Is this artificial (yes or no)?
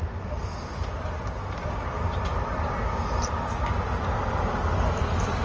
no